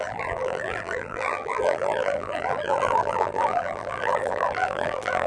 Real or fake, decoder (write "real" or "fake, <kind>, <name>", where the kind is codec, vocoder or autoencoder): fake, vocoder, BigVGAN v2